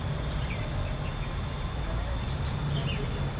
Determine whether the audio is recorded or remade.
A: recorded